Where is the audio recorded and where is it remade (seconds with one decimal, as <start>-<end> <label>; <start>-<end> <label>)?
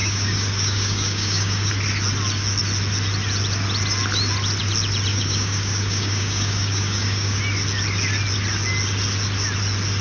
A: 0.0-1.7 remade; 1.7-5.1 recorded; 5.1-7.4 remade; 7.4-10.0 recorded